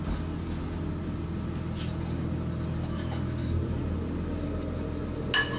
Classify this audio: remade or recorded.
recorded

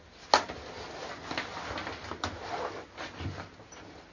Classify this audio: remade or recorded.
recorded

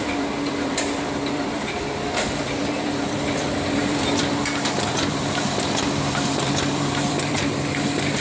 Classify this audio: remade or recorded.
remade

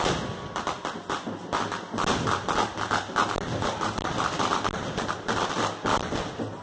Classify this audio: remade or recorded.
recorded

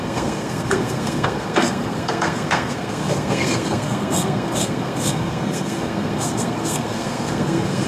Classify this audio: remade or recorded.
remade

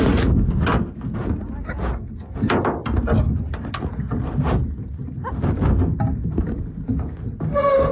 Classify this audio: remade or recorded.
recorded